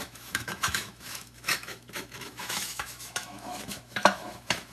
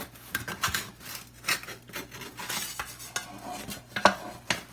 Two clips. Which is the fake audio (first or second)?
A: first